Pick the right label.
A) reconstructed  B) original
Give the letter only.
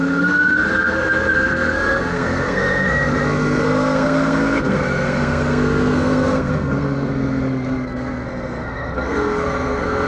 A